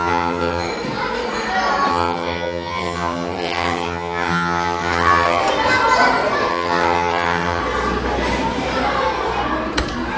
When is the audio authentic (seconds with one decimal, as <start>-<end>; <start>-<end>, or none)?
0.7-1.9; 5.4-6.5; 7.6-10.2